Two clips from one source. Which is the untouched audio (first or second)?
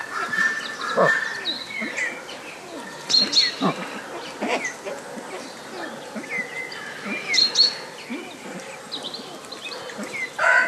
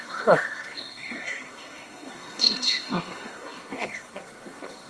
first